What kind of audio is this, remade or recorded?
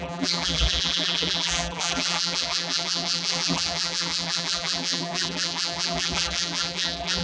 remade